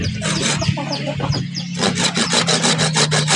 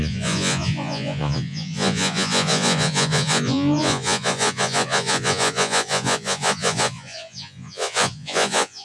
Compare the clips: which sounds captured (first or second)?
first